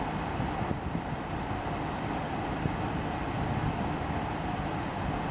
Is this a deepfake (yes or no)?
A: no